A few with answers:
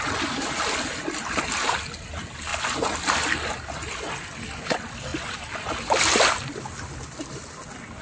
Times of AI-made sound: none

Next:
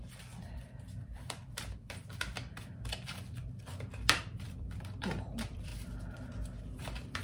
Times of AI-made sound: 0.0-5.7 (vocoder, BigVGAN v2); 6.8-7.2

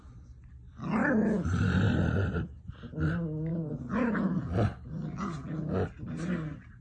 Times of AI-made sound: 1.0-2.7 (vocoder, BigVGAN v2); 3.5-4.4

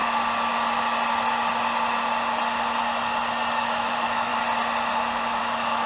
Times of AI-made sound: 3.5-4.3 (autoencoder, DAC-VAE); 5.4-5.9

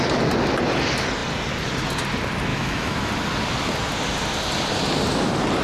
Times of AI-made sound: 2.5-3.1 (autoencoder, DAC-VAE)

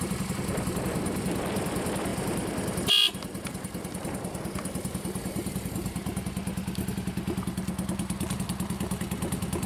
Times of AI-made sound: none

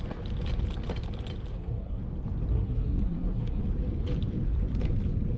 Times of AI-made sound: 1.5-2.0 (codec, SNAC); 2.5-3.6